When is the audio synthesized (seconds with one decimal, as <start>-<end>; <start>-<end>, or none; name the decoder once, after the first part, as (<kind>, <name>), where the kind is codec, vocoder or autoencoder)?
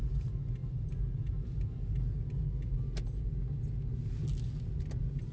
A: none